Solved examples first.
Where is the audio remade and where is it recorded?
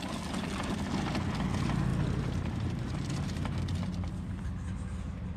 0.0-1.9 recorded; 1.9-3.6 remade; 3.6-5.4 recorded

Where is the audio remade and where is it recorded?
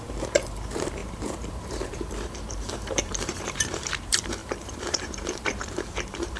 0.0-6.4 remade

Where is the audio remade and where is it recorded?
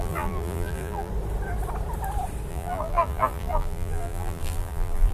0.0-1.1 remade; 1.1-2.5 recorded; 2.5-5.1 remade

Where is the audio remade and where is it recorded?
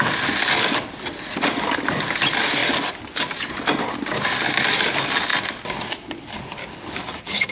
0.0-6.6 recorded; 6.6-7.5 remade